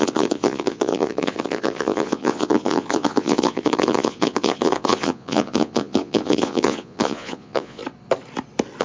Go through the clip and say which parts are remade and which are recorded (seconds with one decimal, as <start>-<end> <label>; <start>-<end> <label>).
0.0-7.8 remade; 7.8-8.8 recorded